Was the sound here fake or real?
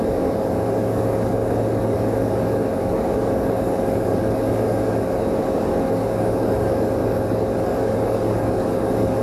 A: fake